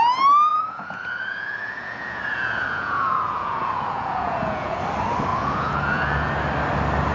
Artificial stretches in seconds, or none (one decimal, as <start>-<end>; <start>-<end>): 0.5-4.8; 5.3-6.3